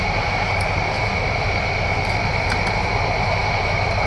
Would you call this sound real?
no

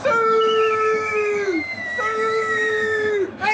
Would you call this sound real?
no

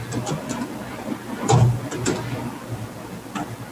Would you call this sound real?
yes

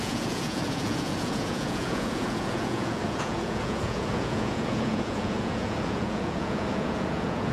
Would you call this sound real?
no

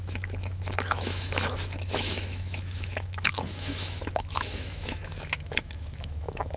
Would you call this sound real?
no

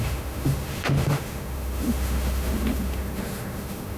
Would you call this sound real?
no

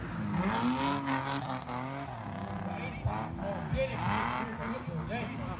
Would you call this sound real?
yes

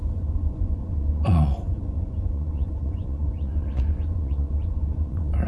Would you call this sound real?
no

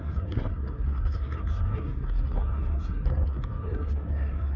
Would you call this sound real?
no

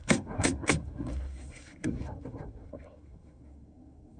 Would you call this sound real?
no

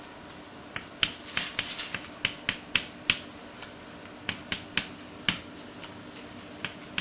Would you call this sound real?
yes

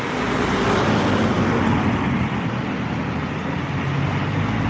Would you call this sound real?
yes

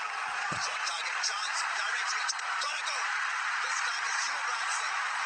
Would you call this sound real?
no